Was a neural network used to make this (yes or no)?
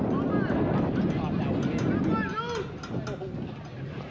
no